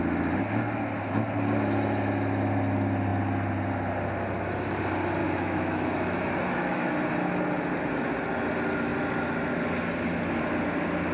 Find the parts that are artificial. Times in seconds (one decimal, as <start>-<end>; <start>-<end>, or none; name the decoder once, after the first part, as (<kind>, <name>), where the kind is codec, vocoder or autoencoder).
5.2-6.9 (autoencoder, DAC-VAE)